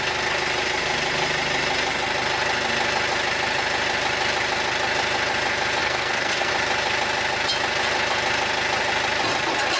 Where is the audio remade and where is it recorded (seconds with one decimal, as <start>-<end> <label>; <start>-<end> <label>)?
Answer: 0.0-5.8 recorded; 5.8-6.5 remade; 6.5-9.8 recorded